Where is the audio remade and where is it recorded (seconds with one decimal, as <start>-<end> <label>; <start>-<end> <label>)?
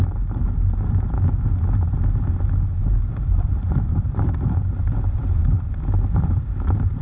0.0-2.8 recorded; 2.8-5.6 remade; 5.6-7.0 recorded